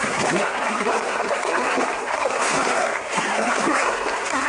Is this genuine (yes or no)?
no